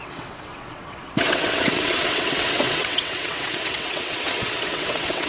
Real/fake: fake